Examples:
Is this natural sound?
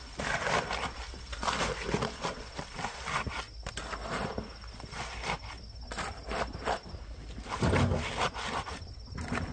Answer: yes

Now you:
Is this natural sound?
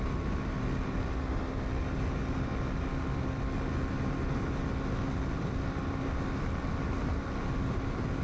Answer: yes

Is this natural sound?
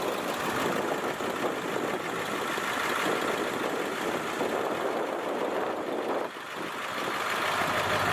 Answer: yes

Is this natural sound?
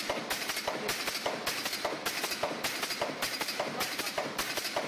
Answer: yes